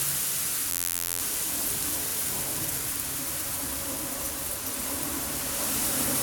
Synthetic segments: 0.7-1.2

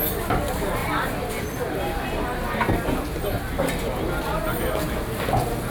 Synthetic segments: none

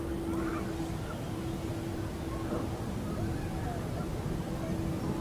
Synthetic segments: none

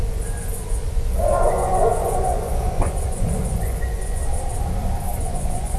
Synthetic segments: 0.0-4.2; 5.2-5.8